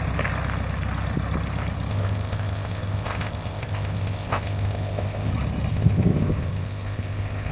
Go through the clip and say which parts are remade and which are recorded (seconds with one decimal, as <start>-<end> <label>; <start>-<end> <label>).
0.0-1.9 recorded; 1.9-5.3 remade; 5.3-5.7 recorded; 5.7-7.5 remade